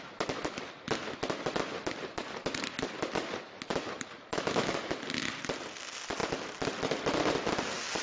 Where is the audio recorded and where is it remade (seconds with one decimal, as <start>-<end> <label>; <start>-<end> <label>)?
0.0-4.3 recorded; 4.3-4.8 remade; 4.8-8.0 recorded